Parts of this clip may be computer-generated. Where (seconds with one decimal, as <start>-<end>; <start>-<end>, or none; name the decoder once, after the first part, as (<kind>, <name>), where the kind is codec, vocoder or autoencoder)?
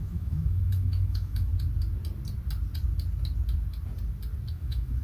0.0-1.5 (autoencoder, DAC-VAE); 4.5-5.0